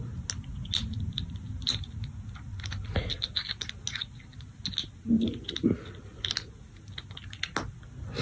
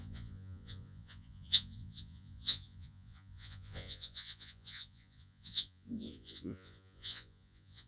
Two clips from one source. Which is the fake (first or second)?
second